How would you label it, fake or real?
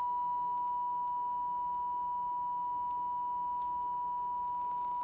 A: real